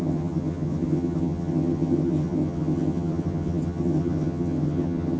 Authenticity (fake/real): fake